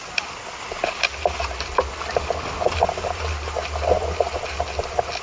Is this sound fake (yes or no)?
no